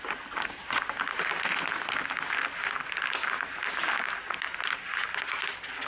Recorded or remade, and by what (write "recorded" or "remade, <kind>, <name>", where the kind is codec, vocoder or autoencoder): recorded